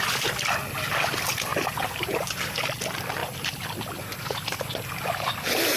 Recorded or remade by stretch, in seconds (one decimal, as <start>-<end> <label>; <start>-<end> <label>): 0.0-1.5 recorded; 1.5-2.5 remade; 2.5-5.8 recorded